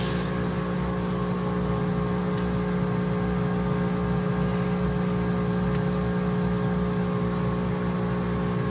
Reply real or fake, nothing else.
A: real